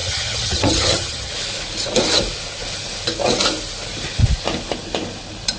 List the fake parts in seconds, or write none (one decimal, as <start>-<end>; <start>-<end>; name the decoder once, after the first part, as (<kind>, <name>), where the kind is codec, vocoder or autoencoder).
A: 0.0-1.3 (vocoder, HiFi-GAN)